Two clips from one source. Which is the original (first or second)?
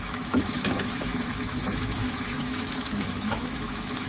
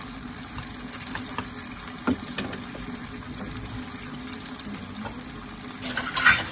second